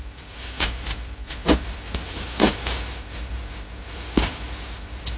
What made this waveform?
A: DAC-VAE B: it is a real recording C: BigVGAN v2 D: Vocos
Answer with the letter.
B